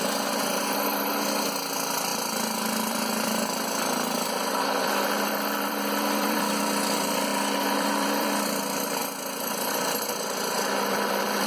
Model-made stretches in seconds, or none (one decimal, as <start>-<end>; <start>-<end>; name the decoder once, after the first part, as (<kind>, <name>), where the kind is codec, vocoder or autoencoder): 0.0-2.1 (vocoder, BigVGAN v2); 2.9-11.5